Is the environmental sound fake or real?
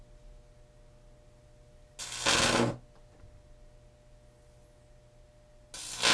real